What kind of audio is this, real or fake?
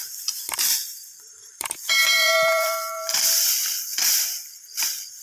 fake